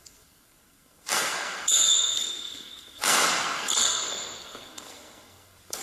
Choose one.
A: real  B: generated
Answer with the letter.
B